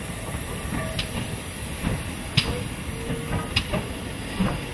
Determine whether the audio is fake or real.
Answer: real